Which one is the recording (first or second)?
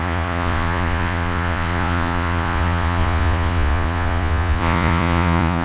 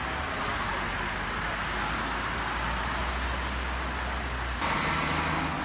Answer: second